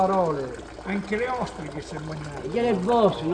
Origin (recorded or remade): recorded